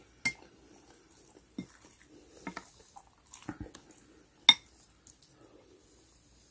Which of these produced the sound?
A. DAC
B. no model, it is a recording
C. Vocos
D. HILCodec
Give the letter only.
B